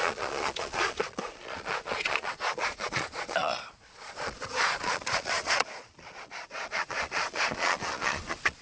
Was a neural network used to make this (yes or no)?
yes